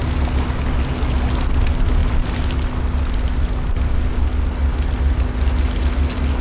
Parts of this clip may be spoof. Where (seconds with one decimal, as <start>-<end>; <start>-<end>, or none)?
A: none